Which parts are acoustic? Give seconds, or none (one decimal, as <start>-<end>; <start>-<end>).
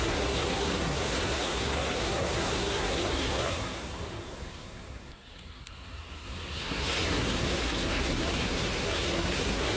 none